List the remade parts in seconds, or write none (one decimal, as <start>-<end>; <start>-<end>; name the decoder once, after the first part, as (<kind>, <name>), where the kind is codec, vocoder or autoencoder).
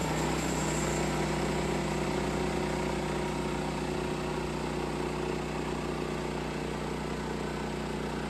none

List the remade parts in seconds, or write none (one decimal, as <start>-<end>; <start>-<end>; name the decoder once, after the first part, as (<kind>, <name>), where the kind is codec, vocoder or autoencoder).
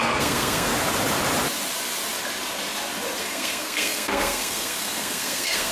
0.0-0.7 (codec, SNAC); 3.2-5.7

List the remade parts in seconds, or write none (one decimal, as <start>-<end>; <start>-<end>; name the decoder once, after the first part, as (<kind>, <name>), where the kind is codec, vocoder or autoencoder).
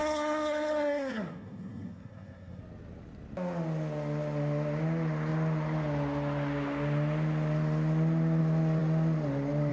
0.0-2.6 (codec, SNAC)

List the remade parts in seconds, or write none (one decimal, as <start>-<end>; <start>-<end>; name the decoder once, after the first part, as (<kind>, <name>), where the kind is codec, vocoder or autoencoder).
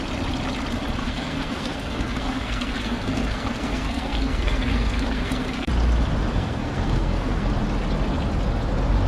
1.0-5.7 (codec, SNAC); 6.3-7.5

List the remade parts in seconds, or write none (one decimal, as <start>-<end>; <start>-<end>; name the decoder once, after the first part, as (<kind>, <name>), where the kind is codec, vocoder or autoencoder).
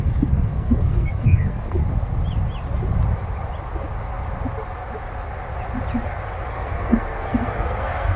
0.0-1.8 (codec, SNAC); 6.5-8.2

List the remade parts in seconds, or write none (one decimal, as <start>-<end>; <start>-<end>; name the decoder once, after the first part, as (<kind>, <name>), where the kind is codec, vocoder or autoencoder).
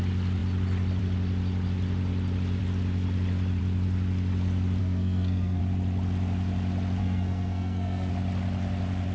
4.8-5.6 (codec, SNAC); 7.0-8.1